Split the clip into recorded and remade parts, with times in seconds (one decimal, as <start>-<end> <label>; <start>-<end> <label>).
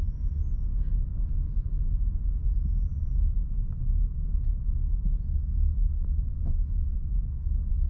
0.0-7.9 recorded